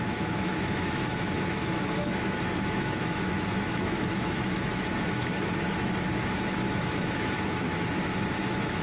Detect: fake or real fake